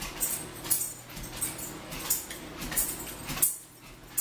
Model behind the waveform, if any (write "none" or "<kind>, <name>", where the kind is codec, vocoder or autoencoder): none